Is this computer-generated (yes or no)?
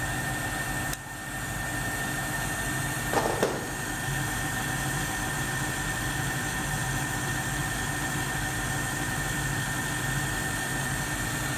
no